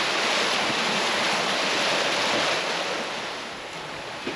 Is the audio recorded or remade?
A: recorded